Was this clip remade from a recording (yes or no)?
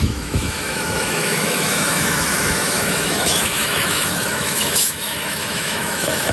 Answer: yes